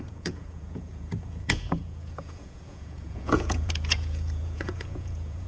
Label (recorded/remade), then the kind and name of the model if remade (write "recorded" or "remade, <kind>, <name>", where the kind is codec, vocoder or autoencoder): remade, vocoder, Vocos